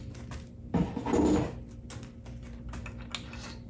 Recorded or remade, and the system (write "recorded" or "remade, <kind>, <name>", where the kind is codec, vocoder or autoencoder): recorded